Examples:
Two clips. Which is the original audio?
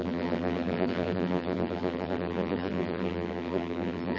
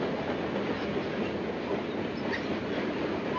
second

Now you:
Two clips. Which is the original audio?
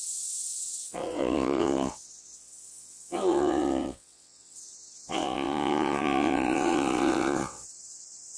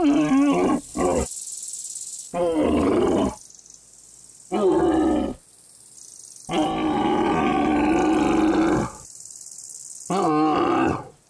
second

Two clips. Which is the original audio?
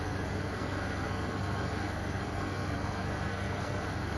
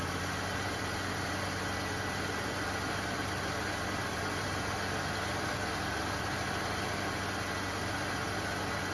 second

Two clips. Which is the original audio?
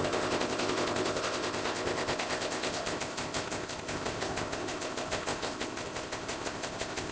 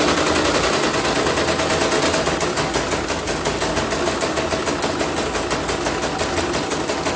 second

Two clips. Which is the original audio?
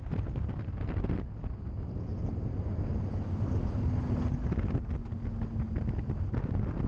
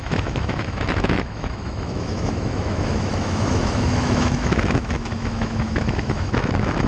first